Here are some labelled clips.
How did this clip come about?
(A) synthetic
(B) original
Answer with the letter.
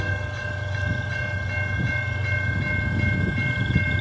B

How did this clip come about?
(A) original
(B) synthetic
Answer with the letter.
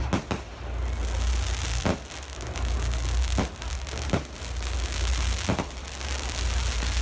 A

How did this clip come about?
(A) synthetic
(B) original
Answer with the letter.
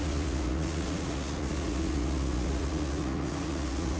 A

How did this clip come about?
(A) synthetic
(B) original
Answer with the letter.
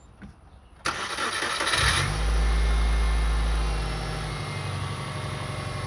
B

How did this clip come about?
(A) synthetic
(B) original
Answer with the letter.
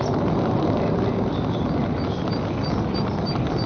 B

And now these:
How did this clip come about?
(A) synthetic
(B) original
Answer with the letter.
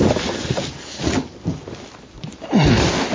B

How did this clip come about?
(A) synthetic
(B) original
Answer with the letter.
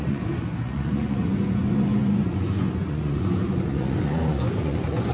A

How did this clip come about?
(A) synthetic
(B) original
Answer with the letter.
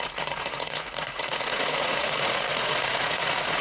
A